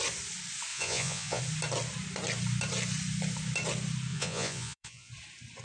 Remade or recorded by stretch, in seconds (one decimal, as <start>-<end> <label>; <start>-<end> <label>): 0.0-0.7 recorded; 0.7-1.4 remade; 1.4-4.1 recorded; 4.1-5.1 remade; 5.1-5.6 recorded